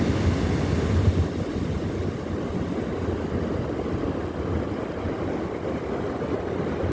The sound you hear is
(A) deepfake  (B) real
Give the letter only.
B